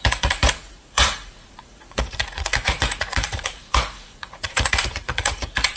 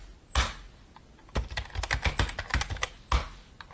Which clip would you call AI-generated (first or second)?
first